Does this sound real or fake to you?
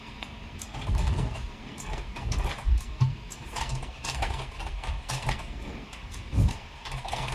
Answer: fake